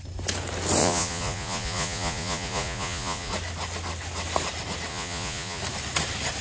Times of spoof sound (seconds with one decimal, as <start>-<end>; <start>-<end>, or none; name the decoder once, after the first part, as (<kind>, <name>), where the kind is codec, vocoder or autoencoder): 0.8-3.3 (vocoder, Vocos); 4.9-5.6